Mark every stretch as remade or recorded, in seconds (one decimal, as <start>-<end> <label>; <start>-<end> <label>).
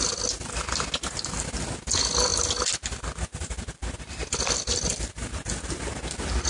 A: 0.0-6.5 recorded